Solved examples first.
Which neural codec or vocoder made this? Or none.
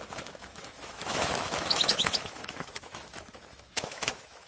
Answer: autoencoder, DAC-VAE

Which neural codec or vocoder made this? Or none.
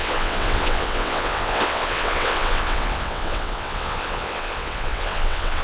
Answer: vocoder, WaveNeXt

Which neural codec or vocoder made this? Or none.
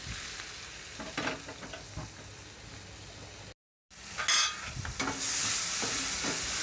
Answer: none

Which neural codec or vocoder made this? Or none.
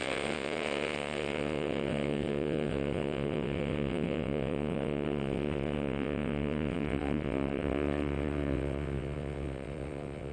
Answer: vocoder, WaveNeXt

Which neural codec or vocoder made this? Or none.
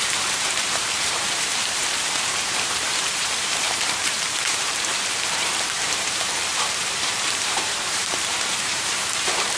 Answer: vocoder, BigVGAN v2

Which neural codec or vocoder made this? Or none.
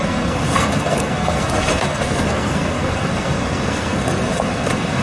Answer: codec, SNAC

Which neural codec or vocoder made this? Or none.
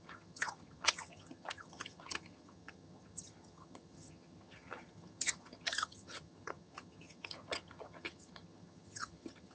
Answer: vocoder, HiFi-GAN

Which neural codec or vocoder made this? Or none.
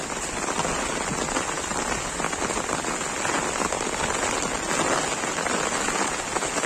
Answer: none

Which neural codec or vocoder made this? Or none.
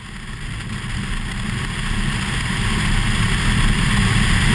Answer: none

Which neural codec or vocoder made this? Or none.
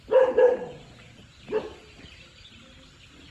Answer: none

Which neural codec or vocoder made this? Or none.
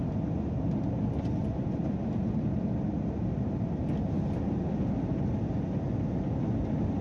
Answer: none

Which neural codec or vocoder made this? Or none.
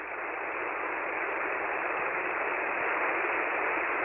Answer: none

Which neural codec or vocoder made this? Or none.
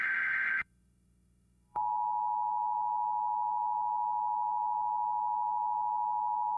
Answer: autoencoder, DAC-VAE